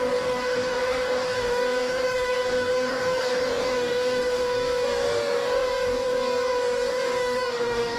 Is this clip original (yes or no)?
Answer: no